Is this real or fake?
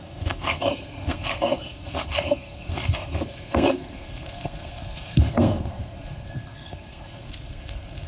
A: fake